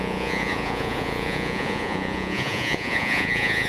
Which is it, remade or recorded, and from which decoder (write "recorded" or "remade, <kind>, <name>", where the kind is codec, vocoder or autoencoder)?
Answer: remade, vocoder, Vocos